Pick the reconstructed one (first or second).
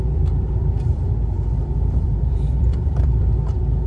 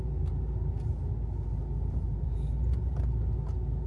first